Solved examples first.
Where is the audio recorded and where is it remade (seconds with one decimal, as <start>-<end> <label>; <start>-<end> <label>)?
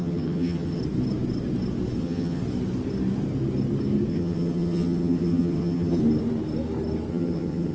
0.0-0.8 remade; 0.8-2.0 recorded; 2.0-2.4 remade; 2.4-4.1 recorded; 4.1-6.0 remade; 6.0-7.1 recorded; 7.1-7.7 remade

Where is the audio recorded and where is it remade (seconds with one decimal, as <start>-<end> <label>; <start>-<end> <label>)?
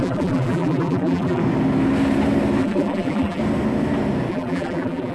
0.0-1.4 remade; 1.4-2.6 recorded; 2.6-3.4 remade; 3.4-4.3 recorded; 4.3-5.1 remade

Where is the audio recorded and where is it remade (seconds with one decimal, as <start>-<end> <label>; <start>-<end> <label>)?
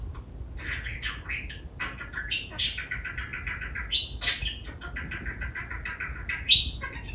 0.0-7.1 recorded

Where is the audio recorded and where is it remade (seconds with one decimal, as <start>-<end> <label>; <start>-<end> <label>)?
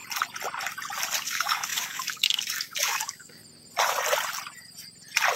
0.0-1.2 recorded; 1.2-3.4 remade; 3.4-5.4 recorded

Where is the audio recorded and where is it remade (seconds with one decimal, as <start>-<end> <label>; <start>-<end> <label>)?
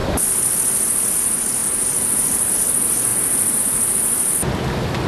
0.0-1.6 recorded; 1.6-2.5 remade; 2.5-3.1 recorded; 3.1-3.6 remade; 3.6-5.1 recorded